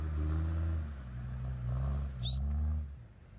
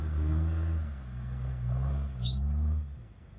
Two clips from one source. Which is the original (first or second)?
first